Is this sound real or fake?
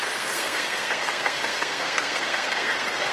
fake